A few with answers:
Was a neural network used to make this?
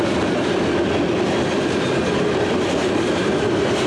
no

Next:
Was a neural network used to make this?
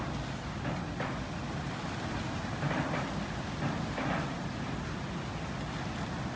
no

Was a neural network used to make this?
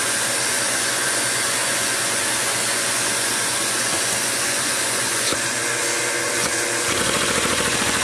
yes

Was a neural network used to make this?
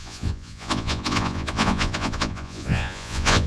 yes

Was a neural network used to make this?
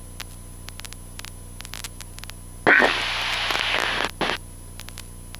no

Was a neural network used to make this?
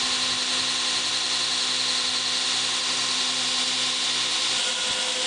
no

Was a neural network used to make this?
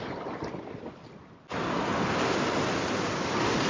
no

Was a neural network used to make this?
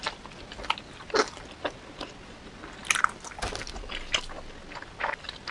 no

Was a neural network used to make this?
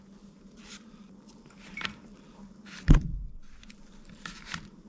yes